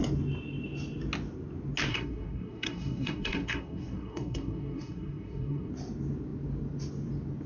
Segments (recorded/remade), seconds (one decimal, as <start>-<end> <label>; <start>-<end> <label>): 0.0-1.9 recorded; 1.9-5.7 remade; 5.7-7.5 recorded